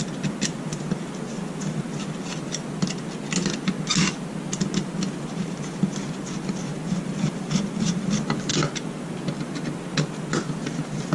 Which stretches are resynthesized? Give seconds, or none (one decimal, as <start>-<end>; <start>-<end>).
none